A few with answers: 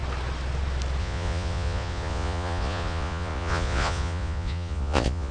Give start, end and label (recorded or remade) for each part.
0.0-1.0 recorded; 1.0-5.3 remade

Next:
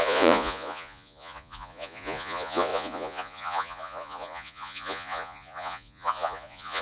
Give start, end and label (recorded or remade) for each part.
0.0-6.8 remade

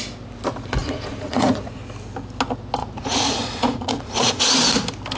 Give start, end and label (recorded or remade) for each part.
0.0-0.8 recorded; 0.8-1.8 remade; 1.8-2.8 recorded; 2.8-4.4 remade; 4.4-5.2 recorded